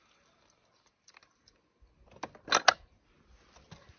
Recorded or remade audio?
recorded